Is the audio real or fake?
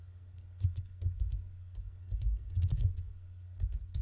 fake